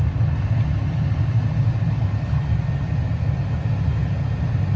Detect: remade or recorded recorded